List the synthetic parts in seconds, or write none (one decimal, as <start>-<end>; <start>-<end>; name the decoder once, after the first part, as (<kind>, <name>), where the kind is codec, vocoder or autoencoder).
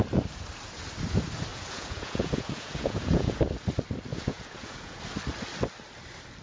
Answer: 1.5-3.4 (vocoder, Vocos); 4.1-5.0